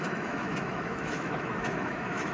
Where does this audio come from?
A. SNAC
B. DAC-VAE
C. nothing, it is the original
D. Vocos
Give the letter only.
B